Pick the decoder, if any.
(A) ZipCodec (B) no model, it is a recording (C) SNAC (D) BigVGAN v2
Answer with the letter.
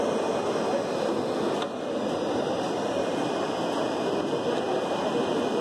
B